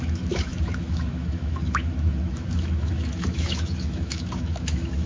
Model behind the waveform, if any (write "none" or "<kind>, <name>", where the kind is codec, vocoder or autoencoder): autoencoder, DAC-VAE